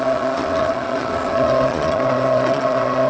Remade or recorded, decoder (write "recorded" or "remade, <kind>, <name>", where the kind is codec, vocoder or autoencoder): remade, vocoder, Vocos